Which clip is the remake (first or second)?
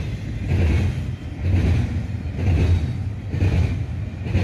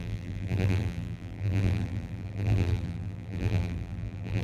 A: second